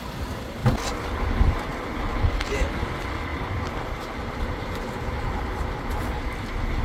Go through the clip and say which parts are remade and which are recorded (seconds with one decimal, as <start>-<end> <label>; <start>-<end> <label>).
0.0-6.8 recorded